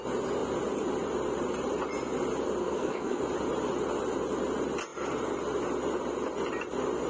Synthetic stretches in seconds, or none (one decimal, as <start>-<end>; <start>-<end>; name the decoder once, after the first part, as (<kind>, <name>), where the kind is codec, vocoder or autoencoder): 2.6-3.2 (codec, SNAC)